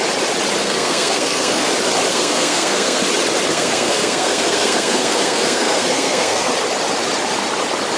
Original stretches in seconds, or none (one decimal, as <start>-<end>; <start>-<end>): 0.0-0.6; 1.7-2.1; 3.0-3.5; 6.5-8.0